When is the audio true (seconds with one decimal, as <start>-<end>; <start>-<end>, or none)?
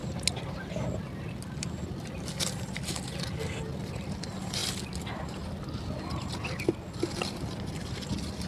0.0-0.8; 4.6-6.6